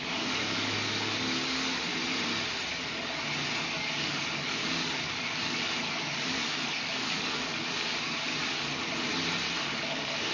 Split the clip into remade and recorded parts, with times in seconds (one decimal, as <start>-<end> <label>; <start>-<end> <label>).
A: 0.0-1.9 remade; 1.9-3.6 recorded; 3.6-8.3 remade; 8.3-9.6 recorded; 9.6-10.3 remade